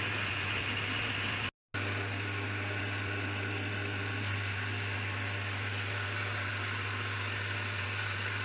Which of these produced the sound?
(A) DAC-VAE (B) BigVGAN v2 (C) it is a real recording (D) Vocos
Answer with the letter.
C